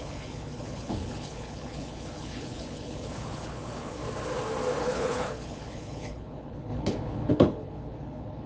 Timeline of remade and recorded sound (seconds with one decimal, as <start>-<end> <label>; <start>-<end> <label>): 0.0-4.0 remade; 4.0-4.8 recorded; 4.8-8.5 remade

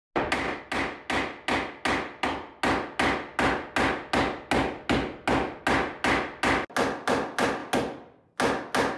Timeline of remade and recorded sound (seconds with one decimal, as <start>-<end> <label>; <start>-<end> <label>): 0.0-9.0 recorded